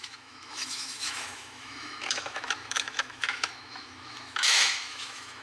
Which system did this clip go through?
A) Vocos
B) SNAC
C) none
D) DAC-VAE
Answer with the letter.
D